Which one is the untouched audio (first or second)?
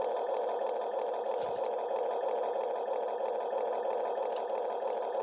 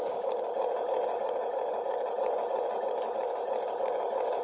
first